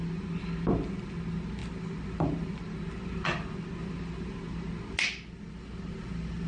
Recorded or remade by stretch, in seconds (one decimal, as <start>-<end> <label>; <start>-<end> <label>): 0.0-6.5 recorded